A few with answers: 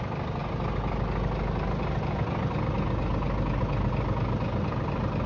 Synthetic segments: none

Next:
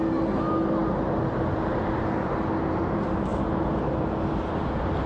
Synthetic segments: none

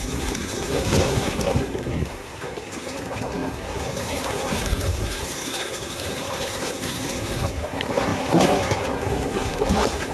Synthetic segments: 0.0-10.1 (codec, SNAC)

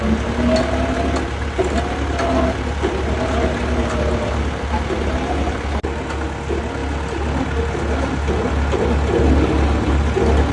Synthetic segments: none

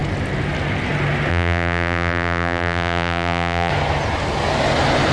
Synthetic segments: 1.3-3.7 (vocoder, BigVGAN v2)